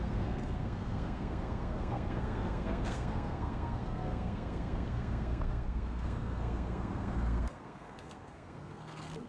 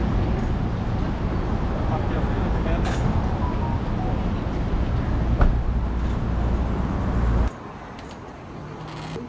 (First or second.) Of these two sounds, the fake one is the first